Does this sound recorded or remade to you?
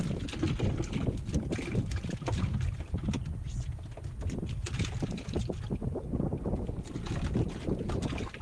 recorded